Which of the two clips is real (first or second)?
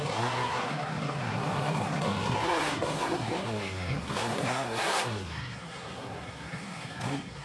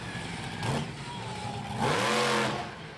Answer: second